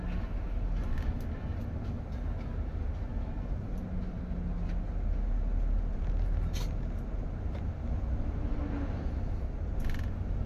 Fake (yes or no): no